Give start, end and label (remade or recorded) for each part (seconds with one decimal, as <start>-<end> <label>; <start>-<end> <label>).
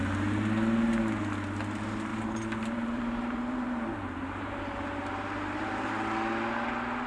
0.0-2.1 recorded; 2.1-5.9 remade; 5.9-7.1 recorded